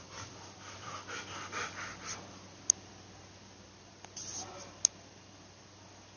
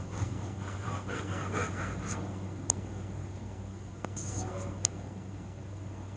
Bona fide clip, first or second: first